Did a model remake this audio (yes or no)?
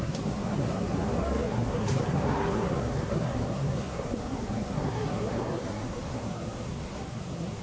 yes